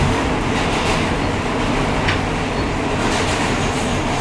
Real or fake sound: real